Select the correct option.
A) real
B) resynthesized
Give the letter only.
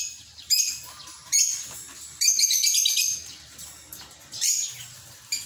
B